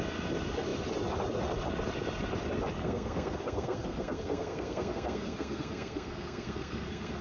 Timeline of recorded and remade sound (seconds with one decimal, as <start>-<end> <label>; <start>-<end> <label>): 0.0-2.8 recorded; 2.8-7.2 remade